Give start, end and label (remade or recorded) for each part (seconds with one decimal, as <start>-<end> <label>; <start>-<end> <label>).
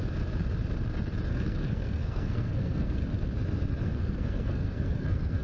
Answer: 0.0-1.3 recorded; 1.3-3.0 remade; 3.0-3.8 recorded; 3.8-5.4 remade